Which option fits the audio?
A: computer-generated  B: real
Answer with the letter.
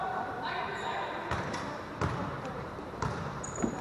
A